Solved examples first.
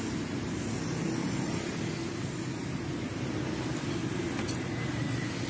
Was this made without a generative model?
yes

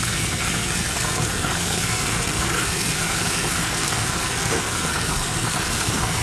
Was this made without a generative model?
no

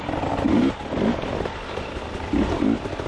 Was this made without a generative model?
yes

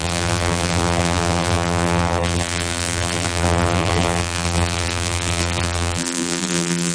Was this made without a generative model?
no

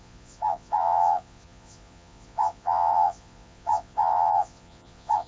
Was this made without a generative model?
no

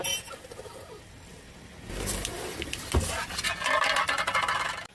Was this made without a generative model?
yes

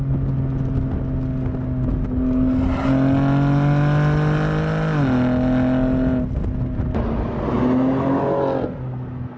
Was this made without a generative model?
yes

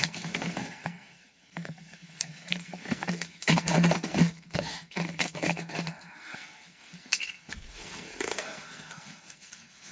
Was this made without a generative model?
no